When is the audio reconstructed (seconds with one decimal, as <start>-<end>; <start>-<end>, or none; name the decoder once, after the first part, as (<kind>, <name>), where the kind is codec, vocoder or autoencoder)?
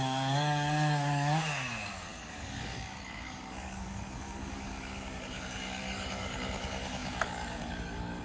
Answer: 0.0-8.2 (codec, DAC)